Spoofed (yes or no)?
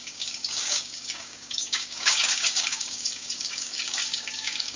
yes